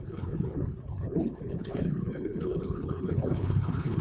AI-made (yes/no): yes